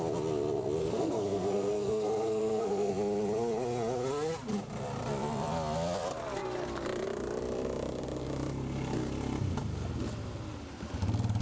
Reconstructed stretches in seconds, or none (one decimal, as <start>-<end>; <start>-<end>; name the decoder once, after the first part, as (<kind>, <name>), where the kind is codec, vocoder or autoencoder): 0.8-2.9 (codec, SNAC)